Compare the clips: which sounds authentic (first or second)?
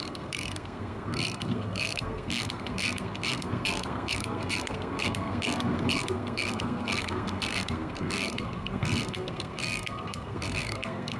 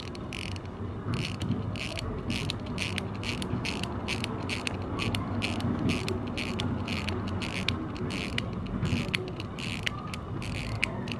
second